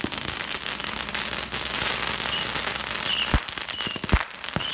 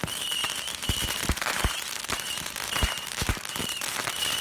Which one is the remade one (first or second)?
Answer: second